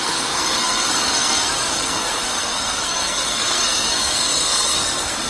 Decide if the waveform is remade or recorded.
remade